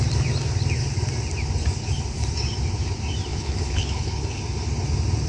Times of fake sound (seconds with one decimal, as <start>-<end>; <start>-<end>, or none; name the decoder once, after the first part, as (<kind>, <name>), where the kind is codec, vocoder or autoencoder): 3.3-4.4 (codec, HILCodec)